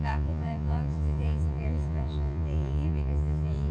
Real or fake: fake